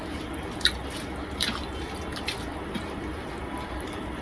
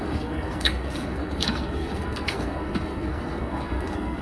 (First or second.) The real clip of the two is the first